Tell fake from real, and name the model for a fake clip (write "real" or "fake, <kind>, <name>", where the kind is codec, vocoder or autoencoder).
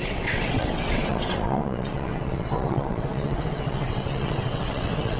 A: fake, vocoder, WaveNeXt